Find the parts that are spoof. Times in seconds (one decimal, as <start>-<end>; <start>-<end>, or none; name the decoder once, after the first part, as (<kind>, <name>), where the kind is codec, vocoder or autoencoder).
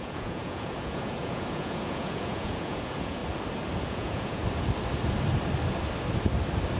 0.0-3.2 (vocoder, Vocos); 3.8-4.4